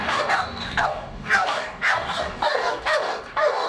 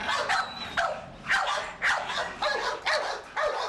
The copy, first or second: first